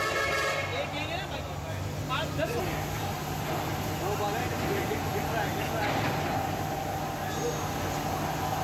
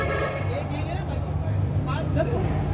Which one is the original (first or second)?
first